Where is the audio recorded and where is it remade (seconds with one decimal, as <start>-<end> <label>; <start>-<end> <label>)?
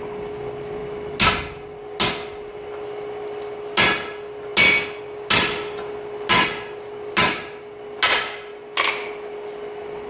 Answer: 0.0-10.1 recorded